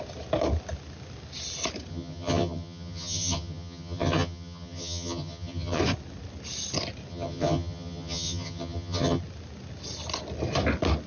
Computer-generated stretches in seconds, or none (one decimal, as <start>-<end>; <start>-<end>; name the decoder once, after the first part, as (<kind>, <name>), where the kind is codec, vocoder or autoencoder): 1.9-5.8 (vocoder, HiFi-GAN); 7.1-9.2